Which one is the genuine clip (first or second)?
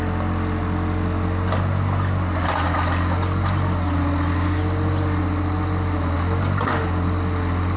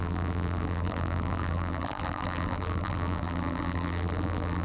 first